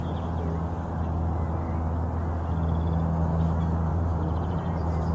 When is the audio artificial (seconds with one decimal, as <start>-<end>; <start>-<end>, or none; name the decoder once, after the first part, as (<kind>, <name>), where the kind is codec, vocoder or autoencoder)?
3.9-5.1 (vocoder, BigVGAN v2)